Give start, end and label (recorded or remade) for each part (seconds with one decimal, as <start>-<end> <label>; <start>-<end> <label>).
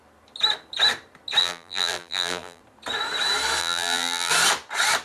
0.0-1.4 recorded; 1.4-2.6 remade; 2.6-3.6 recorded; 3.6-4.3 remade; 4.3-5.0 recorded